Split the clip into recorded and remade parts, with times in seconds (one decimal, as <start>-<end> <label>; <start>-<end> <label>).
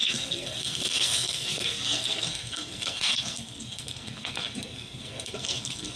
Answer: 0.0-6.0 remade